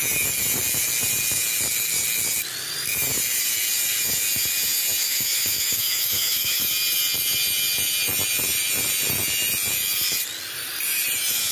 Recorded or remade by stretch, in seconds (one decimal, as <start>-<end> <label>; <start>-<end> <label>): 0.0-5.0 recorded; 5.0-6.7 remade; 6.7-11.5 recorded